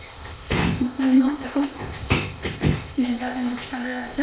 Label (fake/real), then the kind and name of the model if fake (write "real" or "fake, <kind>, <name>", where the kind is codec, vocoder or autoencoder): fake, codec, ZipCodec